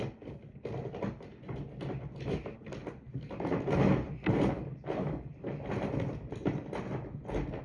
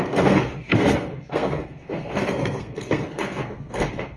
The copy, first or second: second